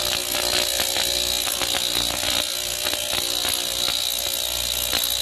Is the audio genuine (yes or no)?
yes